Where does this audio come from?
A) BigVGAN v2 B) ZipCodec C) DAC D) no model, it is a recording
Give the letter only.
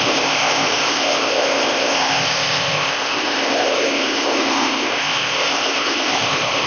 B